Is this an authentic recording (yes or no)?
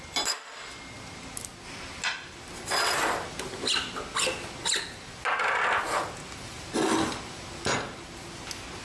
yes